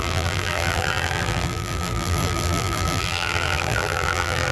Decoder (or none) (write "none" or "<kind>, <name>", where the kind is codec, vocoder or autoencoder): vocoder, BigVGAN v2